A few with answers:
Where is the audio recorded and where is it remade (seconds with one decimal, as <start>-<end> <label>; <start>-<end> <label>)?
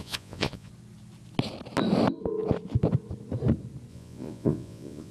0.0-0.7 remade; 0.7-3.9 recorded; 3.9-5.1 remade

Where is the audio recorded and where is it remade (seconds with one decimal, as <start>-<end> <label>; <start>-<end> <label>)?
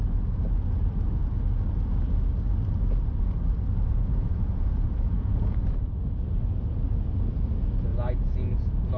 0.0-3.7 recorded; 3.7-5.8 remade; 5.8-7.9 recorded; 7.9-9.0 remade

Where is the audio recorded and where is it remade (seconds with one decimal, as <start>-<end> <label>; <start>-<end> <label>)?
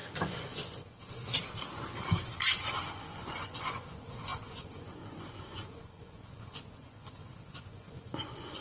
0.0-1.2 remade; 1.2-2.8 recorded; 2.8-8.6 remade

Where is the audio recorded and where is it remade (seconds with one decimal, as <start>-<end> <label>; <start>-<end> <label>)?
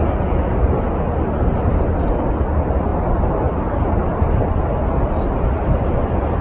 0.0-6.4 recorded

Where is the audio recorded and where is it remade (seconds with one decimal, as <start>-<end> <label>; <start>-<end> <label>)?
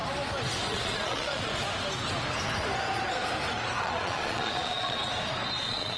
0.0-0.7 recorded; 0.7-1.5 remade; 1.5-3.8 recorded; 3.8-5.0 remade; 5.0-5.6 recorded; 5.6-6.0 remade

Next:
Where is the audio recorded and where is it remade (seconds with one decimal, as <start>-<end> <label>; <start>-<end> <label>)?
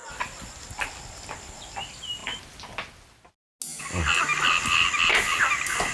0.0-5.9 recorded